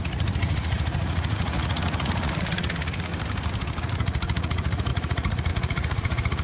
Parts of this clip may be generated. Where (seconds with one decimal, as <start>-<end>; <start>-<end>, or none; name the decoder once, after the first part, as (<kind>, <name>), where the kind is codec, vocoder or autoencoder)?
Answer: 0.0-3.1 (vocoder, Vocos); 3.8-6.4